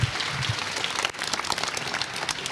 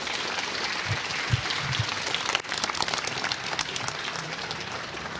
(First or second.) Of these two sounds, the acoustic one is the first